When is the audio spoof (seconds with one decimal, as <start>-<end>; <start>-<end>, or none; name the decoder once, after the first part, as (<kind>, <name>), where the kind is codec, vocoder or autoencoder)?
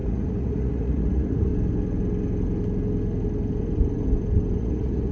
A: 0.0-1.5 (vocoder, Vocos); 4.6-5.1